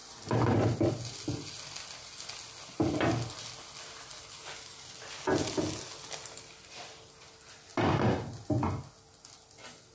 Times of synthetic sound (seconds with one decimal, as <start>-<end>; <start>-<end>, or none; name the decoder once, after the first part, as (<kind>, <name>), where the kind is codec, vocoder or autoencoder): none